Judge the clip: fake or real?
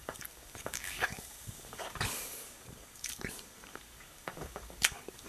fake